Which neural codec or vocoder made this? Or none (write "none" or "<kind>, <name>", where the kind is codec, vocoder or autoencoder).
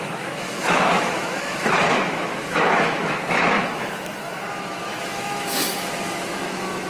autoencoder, DAC-VAE